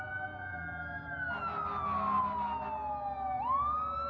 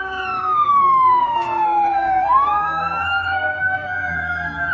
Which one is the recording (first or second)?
first